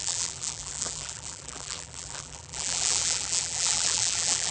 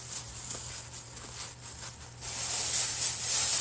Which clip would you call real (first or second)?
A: second